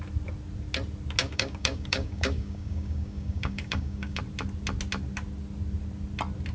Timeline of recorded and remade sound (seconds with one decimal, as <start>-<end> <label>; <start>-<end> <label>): 0.0-1.2 recorded; 1.2-4.2 remade; 4.2-6.5 recorded